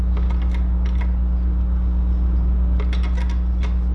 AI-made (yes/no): no